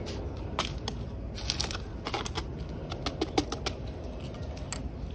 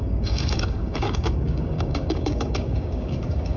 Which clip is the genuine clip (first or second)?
first